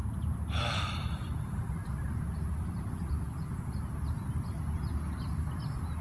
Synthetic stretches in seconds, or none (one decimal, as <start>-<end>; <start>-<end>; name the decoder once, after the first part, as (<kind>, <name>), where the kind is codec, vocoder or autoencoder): none